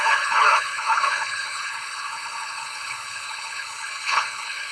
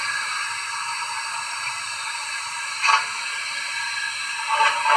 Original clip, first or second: second